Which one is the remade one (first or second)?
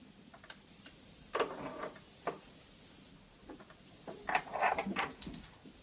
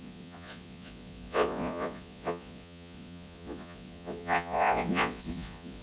second